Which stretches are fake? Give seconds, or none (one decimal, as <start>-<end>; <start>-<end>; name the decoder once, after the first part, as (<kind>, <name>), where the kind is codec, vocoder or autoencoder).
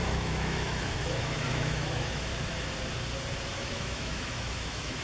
0.0-2.3 (autoencoder, DAC-VAE); 3.7-5.0